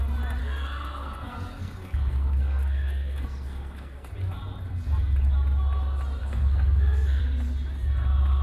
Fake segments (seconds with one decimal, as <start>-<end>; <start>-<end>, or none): 0.4-4.1; 6.2-7.2

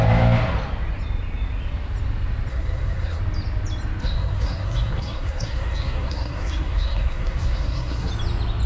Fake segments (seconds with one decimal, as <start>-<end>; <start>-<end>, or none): 2.5-3.2; 4.0-8.1

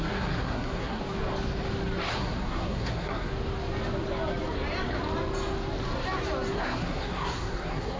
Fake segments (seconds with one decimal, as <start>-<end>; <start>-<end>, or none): 0.0-1.0; 2.1-3.3; 6.5-8.0

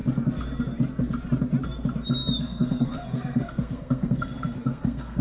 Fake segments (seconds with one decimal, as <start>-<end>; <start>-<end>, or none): 2.4-5.2